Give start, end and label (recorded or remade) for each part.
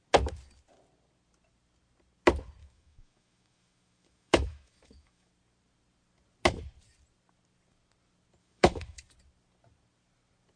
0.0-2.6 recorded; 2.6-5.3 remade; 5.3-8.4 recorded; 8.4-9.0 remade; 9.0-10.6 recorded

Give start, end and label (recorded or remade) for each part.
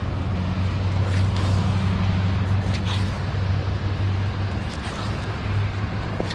0.0-6.3 recorded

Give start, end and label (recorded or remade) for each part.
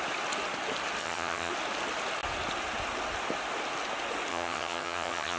0.0-1.0 recorded; 1.0-1.5 remade; 1.5-4.3 recorded; 4.3-5.4 remade